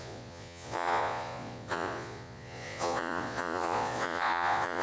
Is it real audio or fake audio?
fake